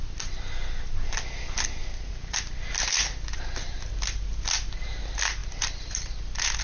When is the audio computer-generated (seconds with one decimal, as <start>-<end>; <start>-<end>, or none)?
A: none